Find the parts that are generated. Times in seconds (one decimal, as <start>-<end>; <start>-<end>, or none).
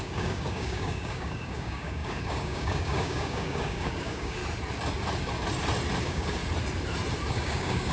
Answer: 0.0-4.4; 6.0-6.4; 7.3-7.9